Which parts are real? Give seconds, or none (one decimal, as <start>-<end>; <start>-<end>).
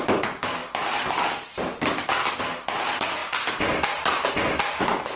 0.0-5.2